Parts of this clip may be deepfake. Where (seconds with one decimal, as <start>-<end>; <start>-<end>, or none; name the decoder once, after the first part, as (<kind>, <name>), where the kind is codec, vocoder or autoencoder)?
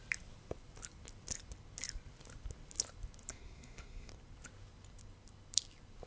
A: 3.3-4.1 (codec, SNAC)